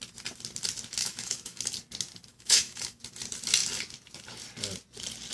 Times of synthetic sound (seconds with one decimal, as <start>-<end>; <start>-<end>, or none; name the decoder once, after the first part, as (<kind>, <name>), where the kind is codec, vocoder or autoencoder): 1.0-1.6 (autoencoder, DAC-VAE); 2.3-3.0